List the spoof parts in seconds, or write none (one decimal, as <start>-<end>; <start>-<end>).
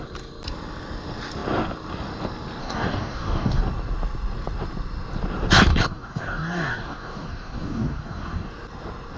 2.6-3.6; 5.7-8.5